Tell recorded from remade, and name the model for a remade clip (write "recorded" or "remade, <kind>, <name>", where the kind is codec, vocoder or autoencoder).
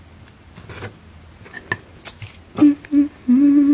recorded